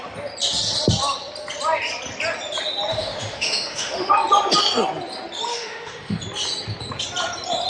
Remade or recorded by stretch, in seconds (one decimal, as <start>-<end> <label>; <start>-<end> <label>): 0.0-2.9 recorded; 2.9-4.1 remade; 4.1-5.5 recorded; 5.5-6.2 remade; 6.2-7.7 recorded